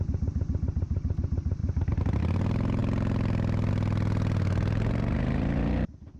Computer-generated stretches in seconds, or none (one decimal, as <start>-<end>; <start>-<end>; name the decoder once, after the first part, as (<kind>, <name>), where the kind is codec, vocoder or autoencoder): none